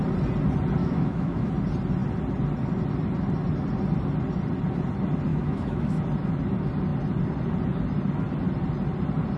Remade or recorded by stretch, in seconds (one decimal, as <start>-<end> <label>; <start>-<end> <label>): 0.0-0.8 recorded; 0.8-1.5 remade; 1.5-5.3 recorded; 5.3-6.0 remade; 6.0-9.4 recorded